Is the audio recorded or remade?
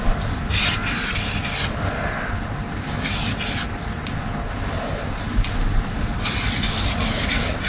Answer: recorded